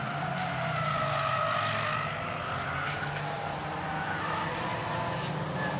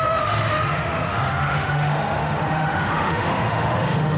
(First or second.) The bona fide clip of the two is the first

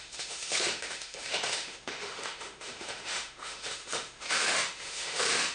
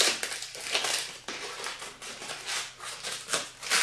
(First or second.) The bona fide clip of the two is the second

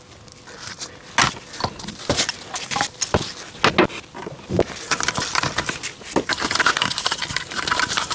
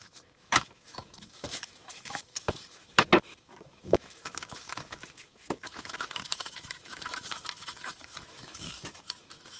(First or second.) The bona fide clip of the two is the first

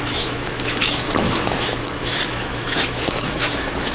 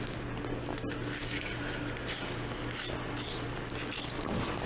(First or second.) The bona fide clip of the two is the second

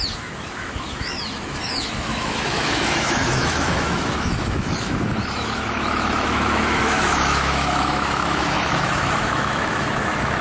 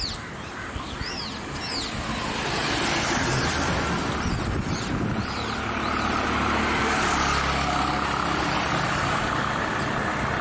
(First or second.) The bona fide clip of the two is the second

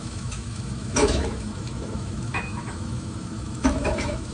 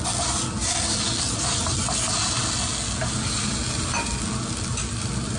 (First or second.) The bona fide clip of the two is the second